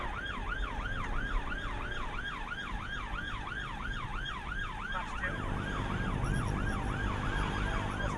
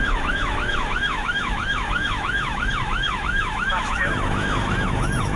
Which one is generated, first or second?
second